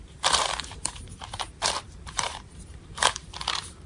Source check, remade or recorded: remade